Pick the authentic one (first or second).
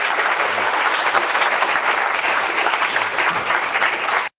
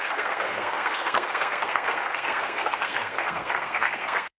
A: first